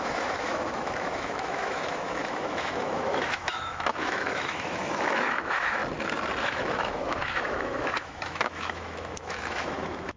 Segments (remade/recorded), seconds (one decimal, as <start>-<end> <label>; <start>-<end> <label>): 0.0-5.8 remade; 5.8-6.4 recorded; 6.4-10.2 remade